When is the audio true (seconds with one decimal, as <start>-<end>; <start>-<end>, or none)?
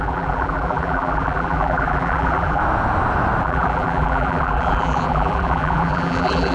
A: 2.6-3.4